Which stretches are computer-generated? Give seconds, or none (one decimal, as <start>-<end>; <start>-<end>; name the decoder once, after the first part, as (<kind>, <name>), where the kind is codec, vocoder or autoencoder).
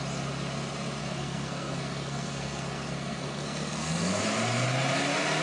1.0-4.2 (codec, SNAC)